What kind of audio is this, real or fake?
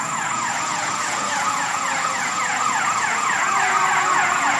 fake